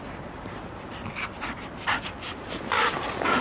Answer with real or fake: real